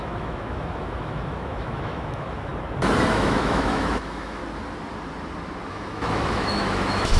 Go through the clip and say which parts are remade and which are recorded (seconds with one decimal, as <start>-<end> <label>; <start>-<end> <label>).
0.0-2.5 remade; 2.5-3.1 recorded; 3.1-4.4 remade; 4.4-5.7 recorded; 5.7-7.2 remade